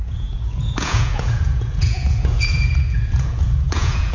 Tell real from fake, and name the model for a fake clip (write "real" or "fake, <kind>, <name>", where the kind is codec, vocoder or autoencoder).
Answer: fake, vocoder, Vocos